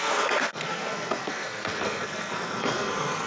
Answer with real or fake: fake